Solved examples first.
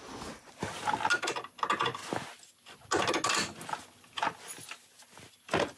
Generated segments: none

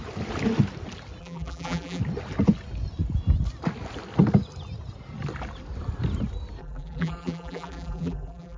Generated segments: 1.2-2.0 (vocoder, BigVGAN v2); 6.6-8.6

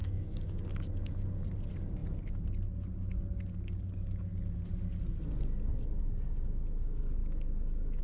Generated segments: 0.0-0.6 (codec, DAC)

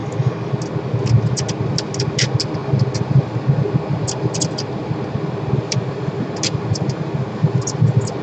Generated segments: 0.0-0.5 (codec, DAC)

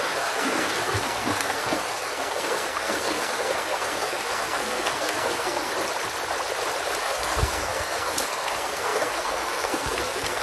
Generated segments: 0.0-5.7 (codec, SNAC); 7.0-10.4

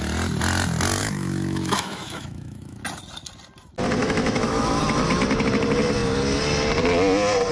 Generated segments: 1.0-2.8 (autoencoder, DAC-VAE); 4.0-4.8

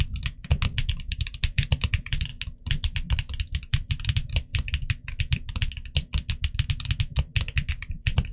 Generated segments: 0.0-0.4 (vocoder, BigVGAN v2); 0.9-2.3; 3.4-4.5; 7.7-8.3